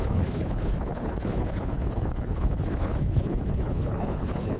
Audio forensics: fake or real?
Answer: fake